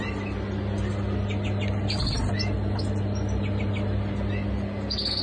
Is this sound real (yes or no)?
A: yes